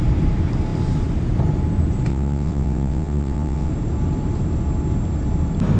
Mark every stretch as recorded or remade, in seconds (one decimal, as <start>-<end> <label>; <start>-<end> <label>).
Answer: 0.0-2.1 recorded; 2.1-3.7 remade; 3.7-5.8 recorded